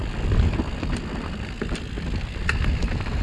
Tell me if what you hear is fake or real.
real